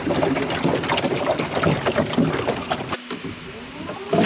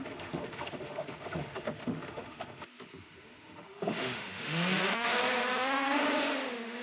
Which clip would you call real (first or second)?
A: first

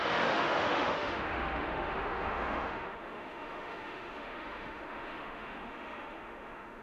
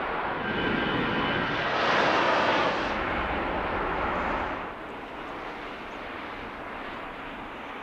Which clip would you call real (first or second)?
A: second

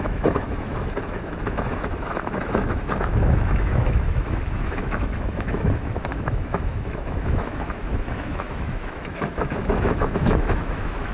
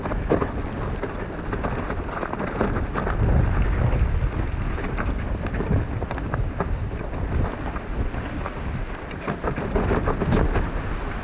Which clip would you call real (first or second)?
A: second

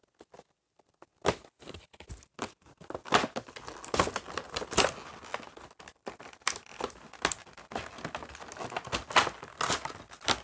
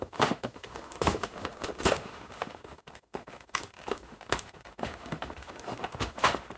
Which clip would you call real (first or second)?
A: first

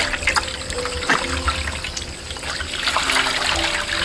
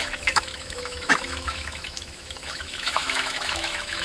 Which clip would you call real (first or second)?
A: first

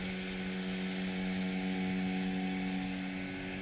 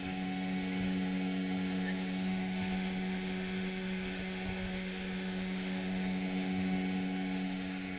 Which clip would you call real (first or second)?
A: first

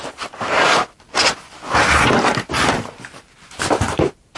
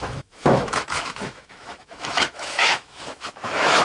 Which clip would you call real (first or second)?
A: first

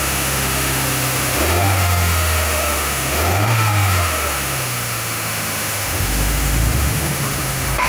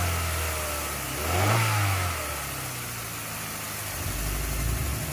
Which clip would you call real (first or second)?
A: second